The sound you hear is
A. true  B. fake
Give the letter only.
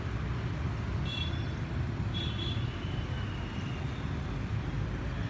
A